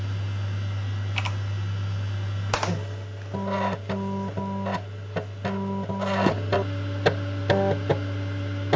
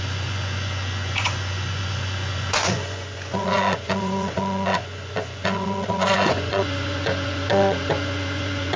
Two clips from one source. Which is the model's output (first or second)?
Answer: second